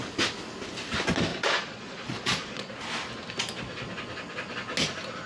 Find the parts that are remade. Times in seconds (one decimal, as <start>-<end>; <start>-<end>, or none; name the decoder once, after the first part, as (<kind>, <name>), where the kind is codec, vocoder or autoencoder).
1.3-2.7 (vocoder, Vocos)